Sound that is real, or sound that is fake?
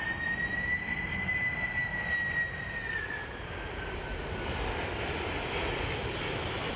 real